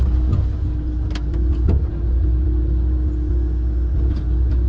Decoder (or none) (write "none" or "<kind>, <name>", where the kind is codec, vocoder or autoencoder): none